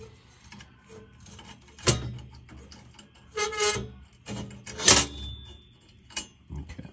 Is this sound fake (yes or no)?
no